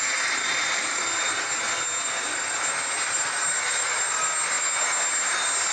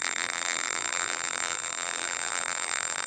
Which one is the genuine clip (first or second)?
first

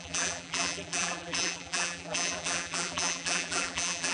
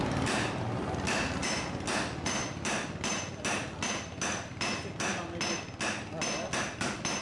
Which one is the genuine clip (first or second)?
second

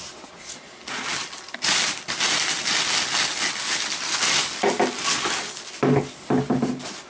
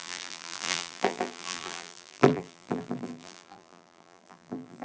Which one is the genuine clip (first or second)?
first